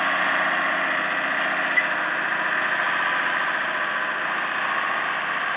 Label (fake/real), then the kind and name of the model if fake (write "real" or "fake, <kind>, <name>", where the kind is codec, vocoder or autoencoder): real